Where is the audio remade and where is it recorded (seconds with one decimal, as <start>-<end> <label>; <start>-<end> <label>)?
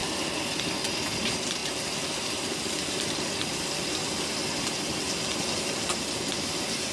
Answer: 0.0-6.9 recorded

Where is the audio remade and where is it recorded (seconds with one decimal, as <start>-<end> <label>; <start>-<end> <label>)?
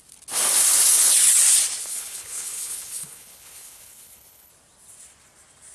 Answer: 0.0-1.8 recorded; 1.8-4.5 remade; 4.5-5.7 recorded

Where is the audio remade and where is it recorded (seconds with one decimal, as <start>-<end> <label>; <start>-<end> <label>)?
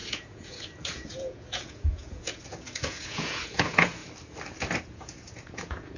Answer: 0.0-4.0 remade; 4.0-4.8 recorded; 4.8-6.0 remade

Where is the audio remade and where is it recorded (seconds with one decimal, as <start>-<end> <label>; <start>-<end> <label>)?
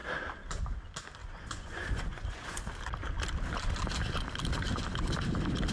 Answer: 0.0-1.2 recorded; 1.2-2.6 remade; 2.6-5.7 recorded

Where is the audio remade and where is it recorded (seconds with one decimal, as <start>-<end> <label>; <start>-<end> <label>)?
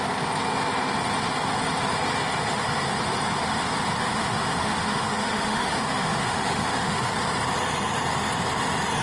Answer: 0.0-4.0 recorded; 4.0-7.1 remade; 7.1-9.0 recorded